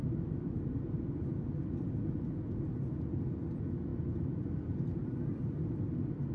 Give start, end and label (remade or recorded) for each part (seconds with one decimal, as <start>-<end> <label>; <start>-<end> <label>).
0.0-1.7 remade; 1.7-3.9 recorded; 3.9-6.3 remade

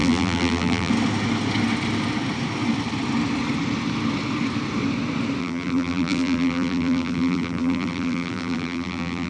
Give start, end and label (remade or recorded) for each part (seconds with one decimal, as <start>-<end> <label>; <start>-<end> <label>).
0.0-0.9 remade; 0.9-5.4 recorded; 5.4-9.3 remade

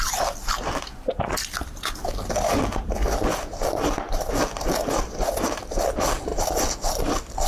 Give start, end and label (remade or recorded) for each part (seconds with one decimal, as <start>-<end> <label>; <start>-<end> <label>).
0.0-6.3 remade; 6.3-6.8 recorded; 6.8-7.5 remade

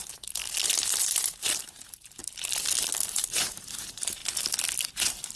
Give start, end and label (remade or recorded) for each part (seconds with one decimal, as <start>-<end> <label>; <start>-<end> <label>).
0.0-0.4 remade; 0.4-1.6 recorded; 1.6-2.2 remade; 2.2-2.8 recorded; 2.8-4.2 remade; 4.2-5.4 recorded

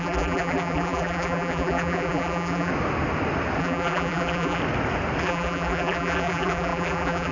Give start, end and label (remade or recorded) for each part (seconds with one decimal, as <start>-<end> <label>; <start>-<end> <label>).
0.0-2.7 remade; 2.7-3.6 recorded; 3.6-4.6 remade; 4.6-5.2 recorded; 5.2-7.3 remade